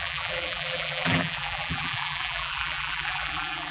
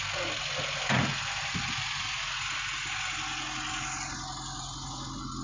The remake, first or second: first